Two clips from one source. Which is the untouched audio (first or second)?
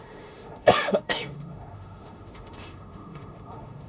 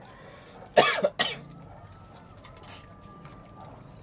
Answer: second